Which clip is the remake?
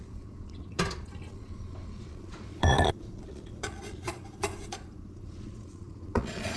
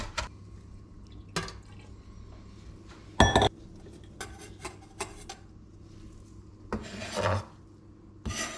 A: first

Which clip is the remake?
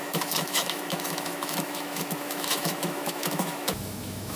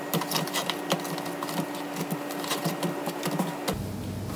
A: first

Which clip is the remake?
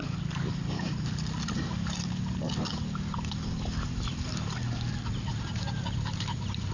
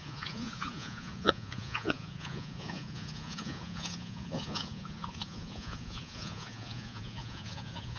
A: second